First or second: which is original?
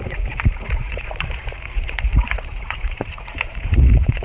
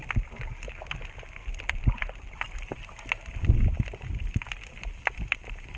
second